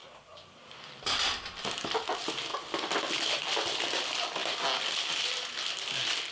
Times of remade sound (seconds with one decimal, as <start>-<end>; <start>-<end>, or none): 0.0-1.2; 2.5-3.4